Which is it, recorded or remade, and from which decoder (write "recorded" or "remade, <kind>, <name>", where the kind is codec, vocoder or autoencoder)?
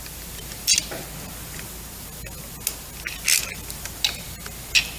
recorded